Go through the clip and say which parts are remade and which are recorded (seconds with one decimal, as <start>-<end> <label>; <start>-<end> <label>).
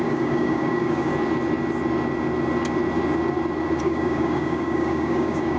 0.0-1.1 remade; 1.1-3.8 recorded; 3.8-5.6 remade